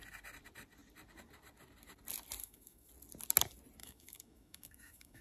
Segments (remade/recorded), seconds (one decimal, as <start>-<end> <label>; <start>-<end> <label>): 0.0-2.4 recorded; 2.4-2.9 remade; 2.9-3.8 recorded; 3.8-5.2 remade